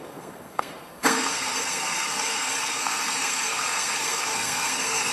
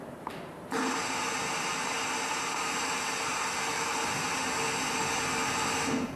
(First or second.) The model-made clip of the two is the first